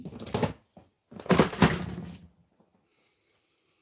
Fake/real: real